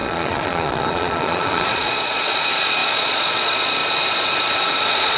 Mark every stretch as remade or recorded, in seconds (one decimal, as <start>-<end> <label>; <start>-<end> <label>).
0.0-3.8 remade; 3.8-4.8 recorded; 4.8-5.2 remade